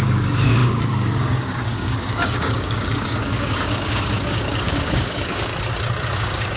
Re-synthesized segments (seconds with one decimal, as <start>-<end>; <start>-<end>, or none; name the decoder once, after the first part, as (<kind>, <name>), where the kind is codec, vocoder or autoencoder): 0.0-5.5 (codec, DAC); 6.1-6.6